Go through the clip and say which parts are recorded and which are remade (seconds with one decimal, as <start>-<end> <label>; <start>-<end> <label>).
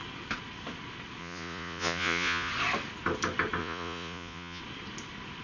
0.0-1.2 recorded; 1.2-2.5 remade; 2.5-3.6 recorded; 3.6-4.6 remade; 4.6-5.4 recorded